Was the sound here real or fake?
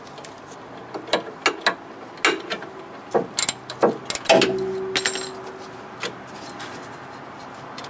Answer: real